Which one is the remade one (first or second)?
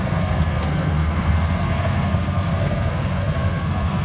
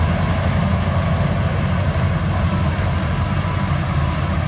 first